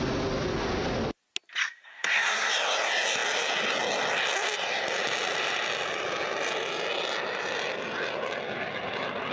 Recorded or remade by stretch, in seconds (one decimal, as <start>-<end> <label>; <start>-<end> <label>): 0.0-1.6 recorded; 1.6-2.5 remade; 2.5-9.3 recorded

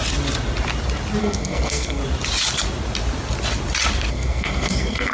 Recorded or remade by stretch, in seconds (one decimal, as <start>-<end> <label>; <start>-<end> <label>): 0.0-1.2 recorded; 1.2-2.0 remade; 2.0-4.1 recorded; 4.1-5.1 remade

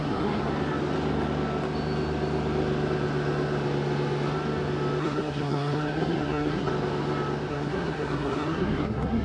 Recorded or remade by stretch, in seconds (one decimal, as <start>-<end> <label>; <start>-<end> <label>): 0.0-0.5 remade; 0.5-5.0 recorded; 5.0-6.7 remade; 6.7-7.5 recorded; 7.5-9.2 remade

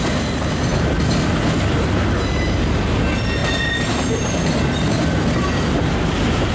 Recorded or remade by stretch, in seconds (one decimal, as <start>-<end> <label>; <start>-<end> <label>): 0.0-6.5 recorded

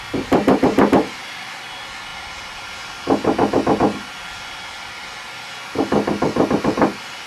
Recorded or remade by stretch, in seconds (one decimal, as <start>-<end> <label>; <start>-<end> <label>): 0.0-7.3 recorded